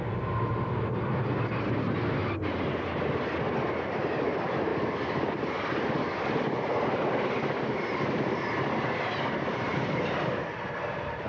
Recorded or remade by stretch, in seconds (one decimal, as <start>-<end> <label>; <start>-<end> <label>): 0.0-11.3 recorded